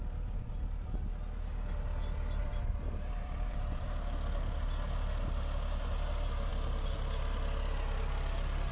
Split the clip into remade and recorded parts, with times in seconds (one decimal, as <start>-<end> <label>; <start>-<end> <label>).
0.0-2.4 recorded; 2.4-3.9 remade; 3.9-8.7 recorded